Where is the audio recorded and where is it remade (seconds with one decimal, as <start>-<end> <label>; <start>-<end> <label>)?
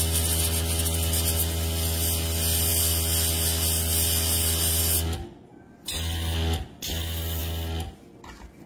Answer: 0.0-8.7 recorded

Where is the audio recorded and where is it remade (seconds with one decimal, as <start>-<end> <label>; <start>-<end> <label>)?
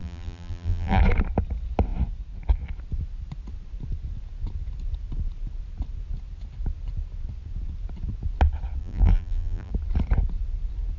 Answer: 0.0-1.0 remade; 1.0-8.8 recorded; 8.8-9.7 remade; 9.7-11.0 recorded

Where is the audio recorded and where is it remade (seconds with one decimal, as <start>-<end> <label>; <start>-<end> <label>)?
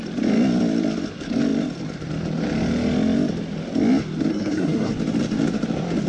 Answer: 0.0-4.3 recorded; 4.3-4.9 remade; 4.9-6.1 recorded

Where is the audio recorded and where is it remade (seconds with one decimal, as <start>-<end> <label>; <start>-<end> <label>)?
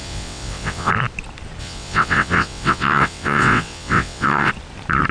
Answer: 0.0-0.9 remade; 0.9-1.6 recorded; 1.6-4.5 remade; 4.5-5.1 recorded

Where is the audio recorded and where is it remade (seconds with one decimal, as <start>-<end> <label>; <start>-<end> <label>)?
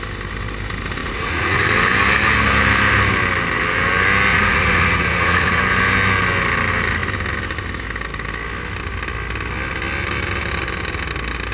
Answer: 0.0-1.0 recorded; 1.0-1.6 remade; 1.6-4.3 recorded; 4.3-5.6 remade; 5.6-11.5 recorded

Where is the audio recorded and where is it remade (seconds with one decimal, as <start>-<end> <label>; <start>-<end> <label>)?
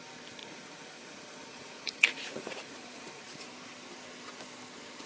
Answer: 0.0-0.4 recorded; 0.4-3.3 remade; 3.3-5.1 recorded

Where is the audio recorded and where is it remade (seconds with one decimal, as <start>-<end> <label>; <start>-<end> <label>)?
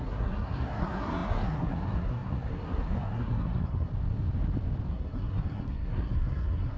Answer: 0.0-3.9 remade; 3.9-4.9 recorded; 4.9-6.8 remade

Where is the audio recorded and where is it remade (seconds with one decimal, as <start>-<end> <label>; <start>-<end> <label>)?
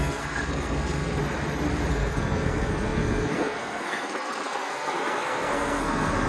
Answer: 0.0-1.2 remade; 1.2-1.9 recorded; 1.9-6.3 remade